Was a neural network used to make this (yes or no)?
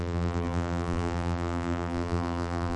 yes